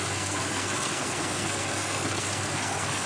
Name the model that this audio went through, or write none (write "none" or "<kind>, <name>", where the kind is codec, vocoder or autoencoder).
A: codec, SNAC